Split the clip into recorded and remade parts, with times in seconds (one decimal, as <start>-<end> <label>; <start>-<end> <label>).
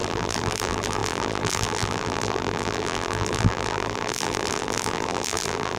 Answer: 0.0-5.8 remade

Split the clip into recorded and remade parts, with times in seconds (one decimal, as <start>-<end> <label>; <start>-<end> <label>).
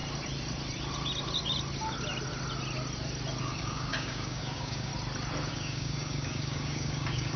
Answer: 0.0-3.4 recorded; 3.4-4.9 remade; 4.9-5.5 recorded; 5.5-7.4 remade